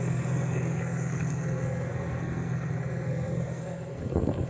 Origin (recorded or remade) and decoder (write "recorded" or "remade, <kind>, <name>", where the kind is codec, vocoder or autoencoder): remade, codec, SNAC